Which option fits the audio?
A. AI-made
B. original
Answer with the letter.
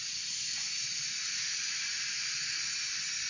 B